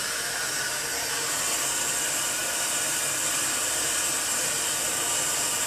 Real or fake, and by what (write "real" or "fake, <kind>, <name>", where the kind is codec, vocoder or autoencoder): real